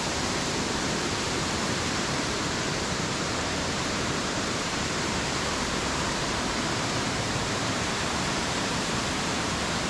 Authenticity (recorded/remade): remade